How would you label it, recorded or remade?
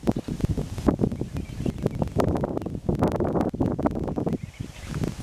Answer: recorded